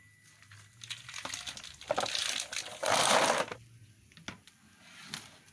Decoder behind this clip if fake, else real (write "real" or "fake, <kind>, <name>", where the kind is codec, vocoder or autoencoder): real